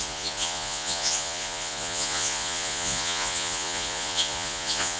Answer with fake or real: fake